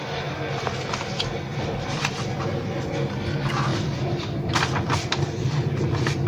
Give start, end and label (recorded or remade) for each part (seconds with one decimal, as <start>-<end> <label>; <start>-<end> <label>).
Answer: 0.0-1.5 recorded; 1.5-2.8 remade; 2.8-3.7 recorded; 3.7-6.3 remade